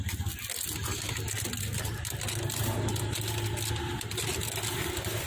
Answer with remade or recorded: recorded